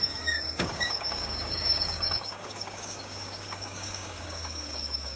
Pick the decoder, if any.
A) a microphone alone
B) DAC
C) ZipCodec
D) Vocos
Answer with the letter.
B